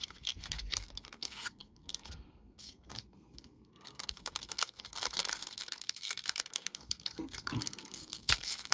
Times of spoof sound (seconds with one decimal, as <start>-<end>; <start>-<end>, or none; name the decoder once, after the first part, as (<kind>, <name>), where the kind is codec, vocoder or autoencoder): 0.0-8.7 (codec, SNAC)